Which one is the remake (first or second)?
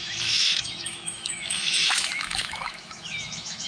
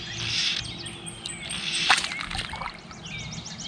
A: first